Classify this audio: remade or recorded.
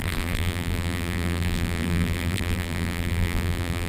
remade